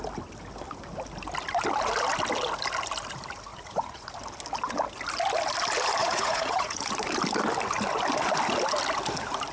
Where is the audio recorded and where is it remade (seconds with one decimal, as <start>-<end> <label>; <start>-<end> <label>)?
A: 0.0-3.5 recorded; 3.5-4.1 remade; 4.1-6.0 recorded; 6.0-6.8 remade; 6.8-9.5 recorded